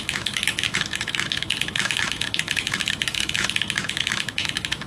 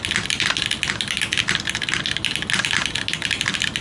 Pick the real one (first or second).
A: second